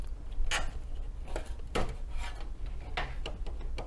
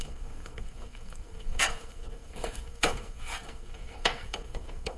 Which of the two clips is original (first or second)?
first